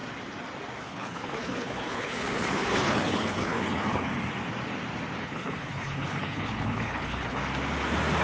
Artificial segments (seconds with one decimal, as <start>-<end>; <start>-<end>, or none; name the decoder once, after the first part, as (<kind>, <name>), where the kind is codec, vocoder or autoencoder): 0.8-4.1 (codec, HILCodec); 5.2-7.4